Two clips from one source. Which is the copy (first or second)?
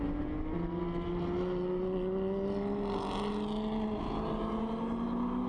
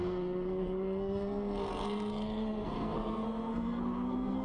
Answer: second